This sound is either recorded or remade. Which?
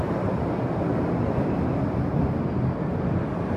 recorded